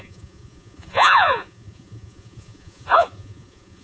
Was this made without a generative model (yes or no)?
no